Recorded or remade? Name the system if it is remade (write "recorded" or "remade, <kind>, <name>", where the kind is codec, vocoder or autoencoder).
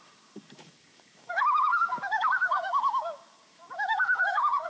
remade, codec, DAC